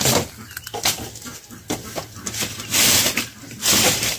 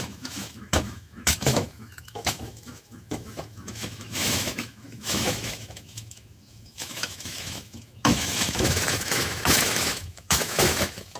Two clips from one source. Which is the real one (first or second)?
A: first